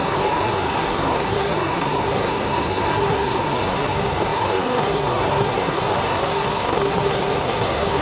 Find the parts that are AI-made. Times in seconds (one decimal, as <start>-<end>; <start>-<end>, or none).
0.0-8.0